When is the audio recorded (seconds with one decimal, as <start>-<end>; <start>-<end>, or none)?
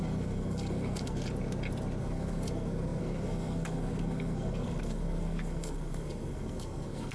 1.2-2.0